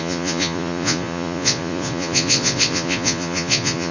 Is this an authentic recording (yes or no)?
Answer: no